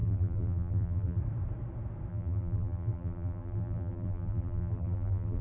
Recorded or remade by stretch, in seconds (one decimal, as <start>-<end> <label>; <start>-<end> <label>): 0.0-1.2 remade; 1.2-2.1 recorded; 2.1-5.4 remade